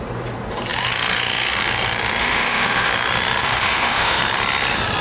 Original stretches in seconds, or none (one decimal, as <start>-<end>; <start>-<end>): 0.0-2.2; 2.9-3.4; 4.2-5.0